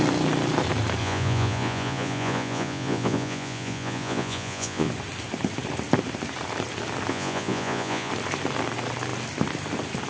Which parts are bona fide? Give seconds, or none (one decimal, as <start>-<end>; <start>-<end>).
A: 0.0-1.0; 4.9-7.1; 8.1-10.1